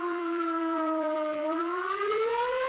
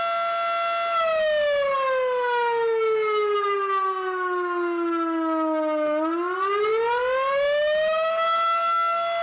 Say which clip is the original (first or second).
second